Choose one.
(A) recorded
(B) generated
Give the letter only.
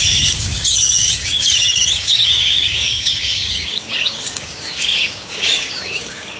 B